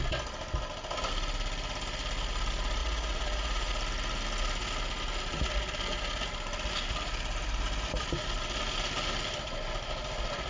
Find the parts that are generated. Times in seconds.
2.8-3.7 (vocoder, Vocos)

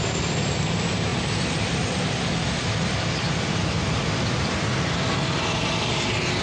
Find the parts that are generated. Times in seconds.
none